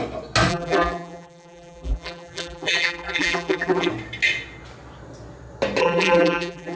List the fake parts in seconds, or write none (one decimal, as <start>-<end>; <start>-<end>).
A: 0.5-3.9; 5.8-6.8